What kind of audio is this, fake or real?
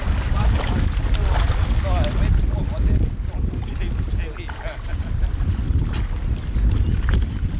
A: real